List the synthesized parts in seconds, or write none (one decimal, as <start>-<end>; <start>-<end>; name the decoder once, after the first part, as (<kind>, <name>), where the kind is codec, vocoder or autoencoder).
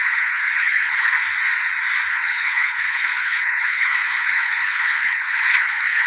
0.0-1.2 (codec, HILCodec); 2.1-6.1